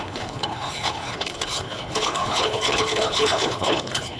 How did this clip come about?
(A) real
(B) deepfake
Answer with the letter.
B